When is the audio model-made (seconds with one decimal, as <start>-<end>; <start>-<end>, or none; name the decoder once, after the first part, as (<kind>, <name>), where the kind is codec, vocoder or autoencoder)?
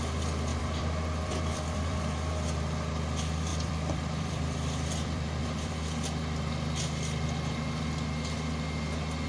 0.5-2.0 (vocoder, BigVGAN v2); 3.5-5.7